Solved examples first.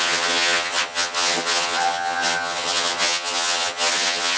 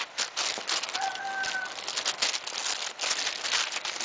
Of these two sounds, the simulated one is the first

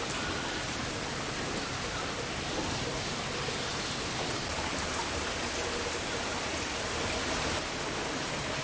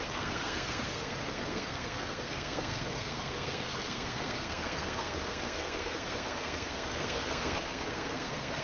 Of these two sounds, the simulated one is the second